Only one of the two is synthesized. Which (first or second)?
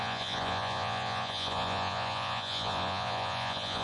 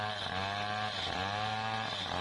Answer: first